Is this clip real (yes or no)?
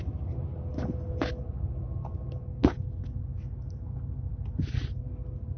yes